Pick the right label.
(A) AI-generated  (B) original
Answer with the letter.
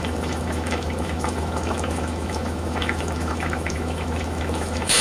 A